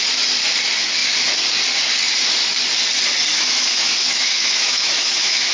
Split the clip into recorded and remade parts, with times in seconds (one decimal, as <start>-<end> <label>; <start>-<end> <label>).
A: 0.0-3.3 recorded; 3.3-5.5 remade